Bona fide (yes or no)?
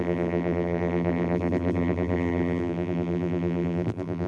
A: no